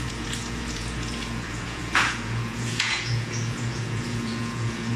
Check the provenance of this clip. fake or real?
fake